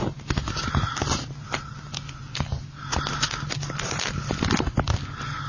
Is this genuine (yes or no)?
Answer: yes